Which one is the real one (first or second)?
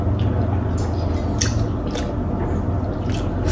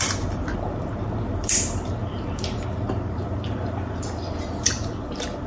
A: first